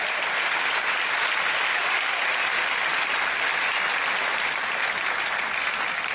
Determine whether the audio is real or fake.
real